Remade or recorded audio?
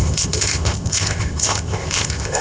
remade